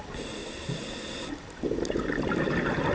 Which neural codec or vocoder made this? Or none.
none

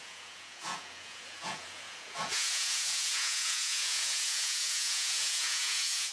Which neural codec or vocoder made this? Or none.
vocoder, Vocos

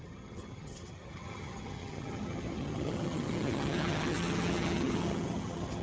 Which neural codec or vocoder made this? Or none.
vocoder, HiFi-GAN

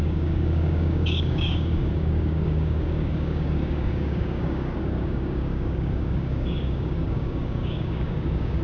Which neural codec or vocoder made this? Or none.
codec, DAC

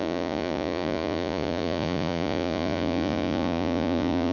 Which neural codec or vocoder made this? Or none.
vocoder, Vocos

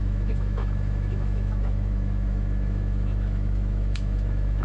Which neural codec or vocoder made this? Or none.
autoencoder, DAC-VAE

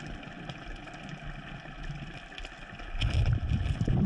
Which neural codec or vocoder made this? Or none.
none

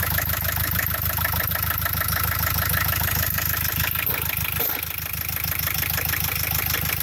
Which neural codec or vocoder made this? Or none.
none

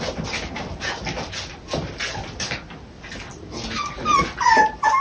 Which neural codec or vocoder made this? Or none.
none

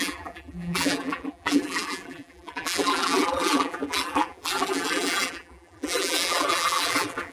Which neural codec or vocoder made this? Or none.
vocoder, BigVGAN v2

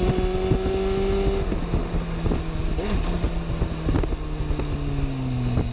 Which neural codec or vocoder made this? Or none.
none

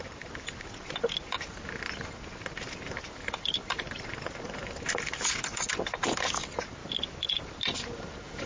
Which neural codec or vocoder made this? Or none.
none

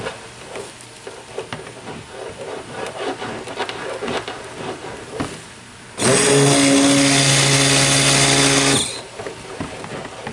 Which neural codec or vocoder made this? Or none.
none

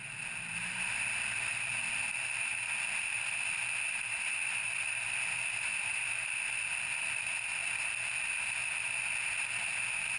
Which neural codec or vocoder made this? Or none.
none